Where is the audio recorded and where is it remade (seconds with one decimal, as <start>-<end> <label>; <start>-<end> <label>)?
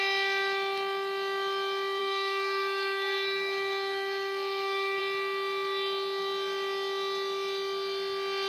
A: 0.0-2.0 recorded; 2.0-5.0 remade; 5.0-8.5 recorded